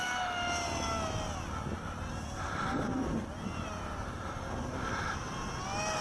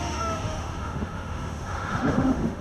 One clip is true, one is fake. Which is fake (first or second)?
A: second